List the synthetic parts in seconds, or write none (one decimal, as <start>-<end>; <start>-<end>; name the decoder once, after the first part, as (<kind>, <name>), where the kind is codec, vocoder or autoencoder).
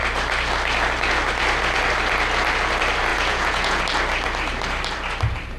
3.1-3.8 (vocoder, Vocos)